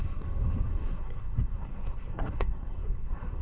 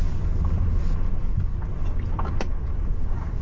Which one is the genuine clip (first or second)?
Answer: second